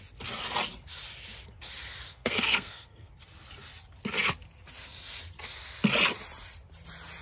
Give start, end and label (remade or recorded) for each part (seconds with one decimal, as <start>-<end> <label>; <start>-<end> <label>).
0.0-2.1 recorded; 2.1-3.1 remade; 3.1-7.2 recorded